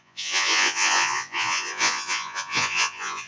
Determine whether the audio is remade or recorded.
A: remade